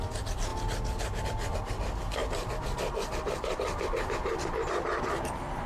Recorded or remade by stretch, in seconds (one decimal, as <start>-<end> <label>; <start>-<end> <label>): 0.0-5.7 recorded